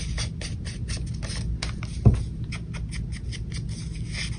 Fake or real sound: real